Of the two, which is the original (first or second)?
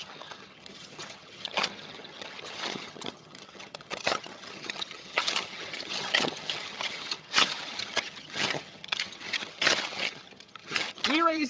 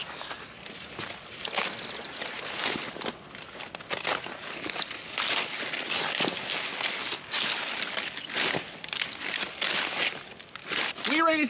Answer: second